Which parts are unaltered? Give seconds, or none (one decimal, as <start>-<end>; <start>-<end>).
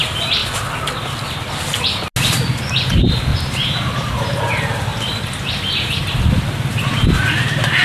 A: 0.0-3.3; 4.5-7.8